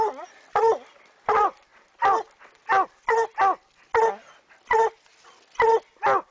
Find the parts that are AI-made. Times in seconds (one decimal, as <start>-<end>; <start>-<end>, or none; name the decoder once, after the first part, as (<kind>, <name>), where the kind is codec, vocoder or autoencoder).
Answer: none